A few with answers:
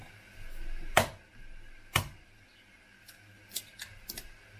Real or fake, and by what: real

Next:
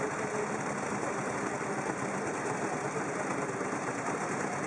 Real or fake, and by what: real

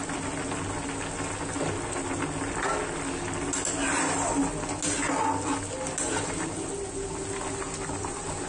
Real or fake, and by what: real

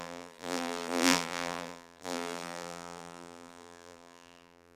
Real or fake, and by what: fake, vocoder, BigVGAN v2